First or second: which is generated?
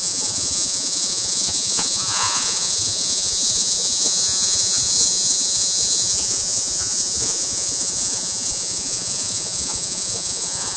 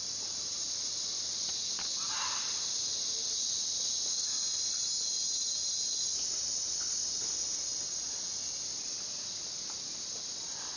first